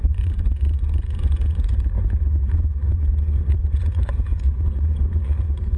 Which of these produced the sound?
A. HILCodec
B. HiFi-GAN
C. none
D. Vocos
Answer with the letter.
D